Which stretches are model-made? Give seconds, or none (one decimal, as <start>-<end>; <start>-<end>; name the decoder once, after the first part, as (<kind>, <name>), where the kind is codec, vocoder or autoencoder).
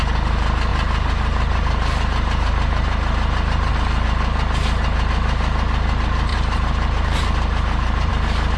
0.7-3.7 (vocoder, BigVGAN v2); 6.3-8.1